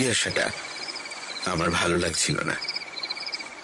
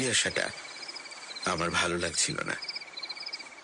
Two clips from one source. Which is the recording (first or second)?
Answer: second